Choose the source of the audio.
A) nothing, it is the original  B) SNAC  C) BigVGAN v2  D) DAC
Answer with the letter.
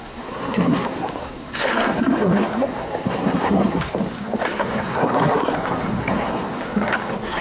B